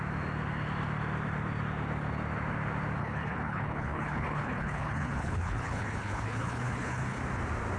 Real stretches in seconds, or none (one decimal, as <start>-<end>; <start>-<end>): 0.0-3.0; 7.2-7.8